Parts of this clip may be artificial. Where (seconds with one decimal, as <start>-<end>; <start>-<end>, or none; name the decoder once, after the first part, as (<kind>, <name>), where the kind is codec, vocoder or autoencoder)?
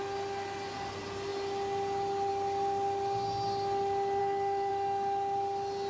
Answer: 4.2-4.7 (codec, SNAC)